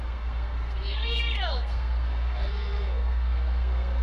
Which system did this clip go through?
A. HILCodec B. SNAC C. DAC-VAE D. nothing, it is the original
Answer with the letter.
B